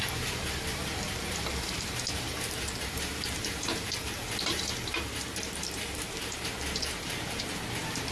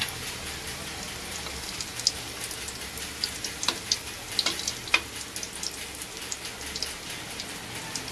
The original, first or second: second